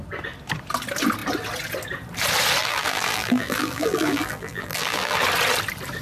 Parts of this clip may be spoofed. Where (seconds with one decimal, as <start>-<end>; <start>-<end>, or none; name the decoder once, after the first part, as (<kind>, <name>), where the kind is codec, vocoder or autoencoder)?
2.6-5.2 (vocoder, BigVGAN v2)